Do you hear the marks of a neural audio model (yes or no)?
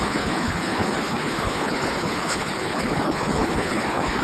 yes